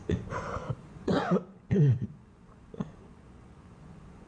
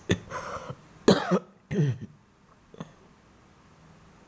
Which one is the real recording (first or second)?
second